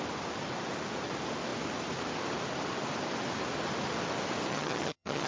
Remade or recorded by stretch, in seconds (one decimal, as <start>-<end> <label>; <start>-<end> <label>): 0.0-4.5 recorded; 4.5-5.3 remade